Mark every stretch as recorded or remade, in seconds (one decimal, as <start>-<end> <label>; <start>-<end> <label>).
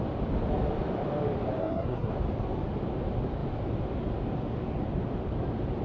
0.0-1.6 recorded; 1.6-2.1 remade; 2.1-5.8 recorded